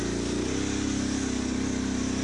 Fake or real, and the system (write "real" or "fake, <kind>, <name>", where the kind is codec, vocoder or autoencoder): real